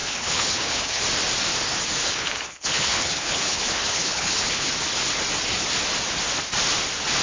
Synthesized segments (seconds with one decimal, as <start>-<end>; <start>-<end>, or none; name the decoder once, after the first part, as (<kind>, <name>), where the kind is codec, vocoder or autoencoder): 0.0-1.0 (codec, HILCodec); 2.0-4.7